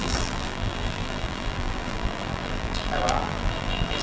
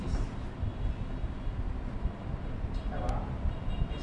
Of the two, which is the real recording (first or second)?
second